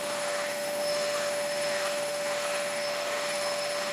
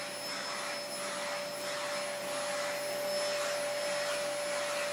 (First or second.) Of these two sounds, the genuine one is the second